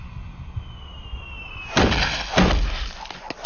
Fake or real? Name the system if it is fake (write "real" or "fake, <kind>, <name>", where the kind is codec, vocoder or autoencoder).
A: real